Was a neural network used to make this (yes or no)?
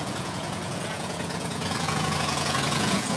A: yes